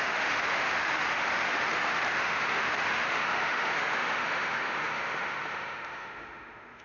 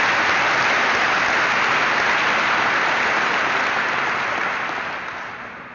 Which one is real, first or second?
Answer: second